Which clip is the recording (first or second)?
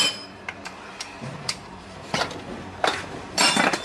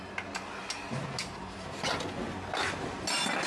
second